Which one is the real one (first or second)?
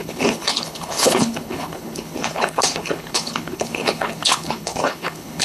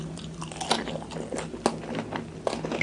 second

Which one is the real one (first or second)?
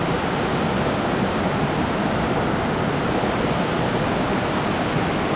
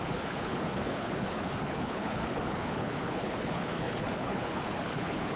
first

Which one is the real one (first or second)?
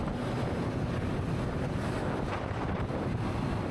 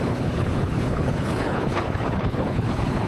first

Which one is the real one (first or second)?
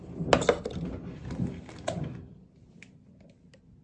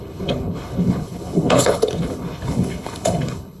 first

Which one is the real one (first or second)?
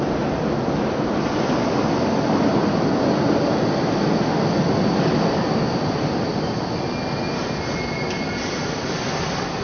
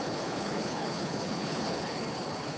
first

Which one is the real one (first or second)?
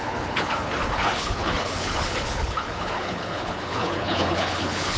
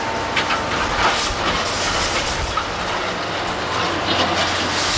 second